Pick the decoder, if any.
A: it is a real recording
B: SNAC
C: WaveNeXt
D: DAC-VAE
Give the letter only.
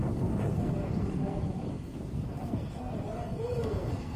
B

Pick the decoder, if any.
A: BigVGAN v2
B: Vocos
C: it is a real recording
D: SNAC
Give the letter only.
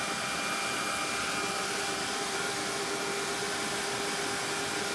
C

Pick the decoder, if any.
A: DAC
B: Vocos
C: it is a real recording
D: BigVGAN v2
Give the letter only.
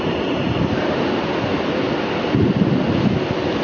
C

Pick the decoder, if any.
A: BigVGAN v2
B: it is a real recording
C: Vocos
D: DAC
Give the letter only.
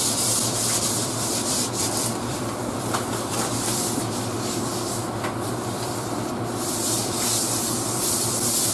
A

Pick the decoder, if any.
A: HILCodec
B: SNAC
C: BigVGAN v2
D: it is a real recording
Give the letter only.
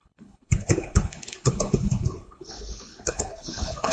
A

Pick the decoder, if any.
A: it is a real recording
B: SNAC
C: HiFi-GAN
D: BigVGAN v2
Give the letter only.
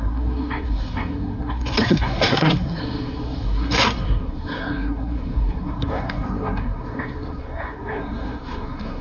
B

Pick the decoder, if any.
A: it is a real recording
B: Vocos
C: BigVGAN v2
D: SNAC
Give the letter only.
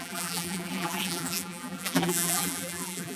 C